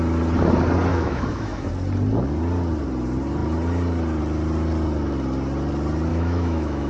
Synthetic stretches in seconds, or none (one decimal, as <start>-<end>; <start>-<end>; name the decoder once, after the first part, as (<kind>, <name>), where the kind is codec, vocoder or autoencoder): 0.9-1.7 (autoencoder, DAC-VAE); 6.1-6.9